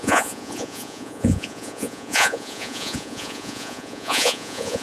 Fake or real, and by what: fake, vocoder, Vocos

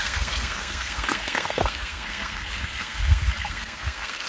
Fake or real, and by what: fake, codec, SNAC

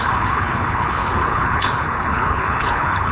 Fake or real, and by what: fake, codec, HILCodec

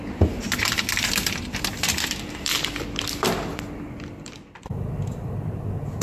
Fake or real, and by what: fake, vocoder, BigVGAN v2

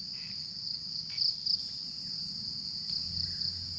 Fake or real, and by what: real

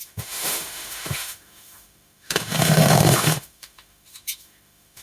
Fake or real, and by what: fake, autoencoder, DAC-VAE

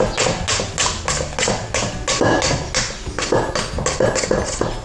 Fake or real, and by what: real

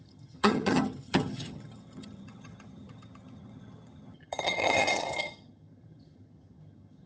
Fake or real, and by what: fake, vocoder, HiFi-GAN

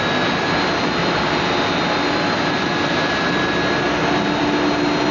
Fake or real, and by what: real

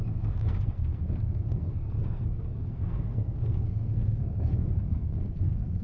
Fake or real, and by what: fake, codec, SNAC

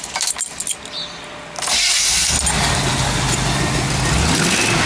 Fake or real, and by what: real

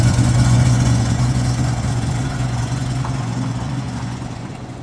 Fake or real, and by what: fake, vocoder, Vocos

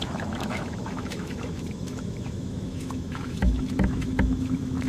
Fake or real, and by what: fake, autoencoder, DAC-VAE